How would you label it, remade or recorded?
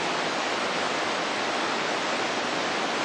recorded